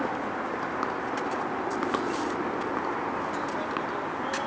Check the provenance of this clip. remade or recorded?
recorded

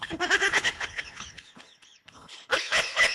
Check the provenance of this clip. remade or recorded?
remade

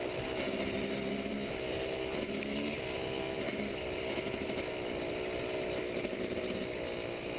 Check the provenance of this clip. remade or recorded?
recorded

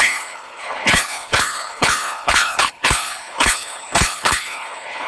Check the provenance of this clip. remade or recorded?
remade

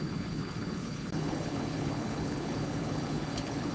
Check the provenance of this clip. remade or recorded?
remade